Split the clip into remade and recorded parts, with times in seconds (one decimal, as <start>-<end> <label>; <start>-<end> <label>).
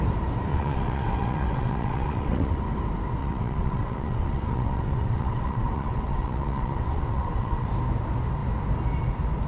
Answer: 0.0-0.5 recorded; 0.5-2.6 remade; 2.6-3.2 recorded; 3.2-7.7 remade; 7.7-9.5 recorded